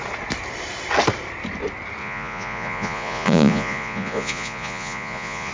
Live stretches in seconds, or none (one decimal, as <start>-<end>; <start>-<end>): 0.0-2.0